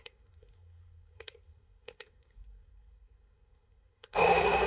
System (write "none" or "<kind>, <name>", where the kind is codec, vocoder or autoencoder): codec, SNAC